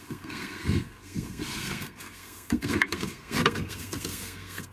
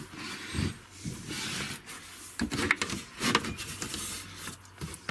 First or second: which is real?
second